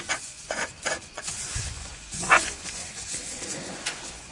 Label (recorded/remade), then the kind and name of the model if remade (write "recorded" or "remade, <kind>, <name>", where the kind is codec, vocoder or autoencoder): remade, vocoder, Vocos